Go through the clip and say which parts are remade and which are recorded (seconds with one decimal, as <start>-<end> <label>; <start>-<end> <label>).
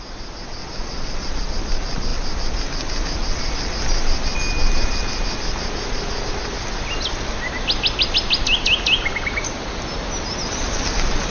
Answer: 0.0-0.6 recorded; 0.6-1.4 remade; 1.4-11.3 recorded